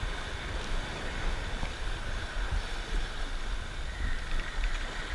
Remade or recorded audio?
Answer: recorded